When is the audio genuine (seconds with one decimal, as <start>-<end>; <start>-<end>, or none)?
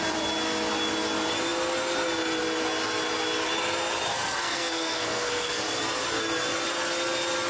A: 0.0-4.1; 5.6-7.5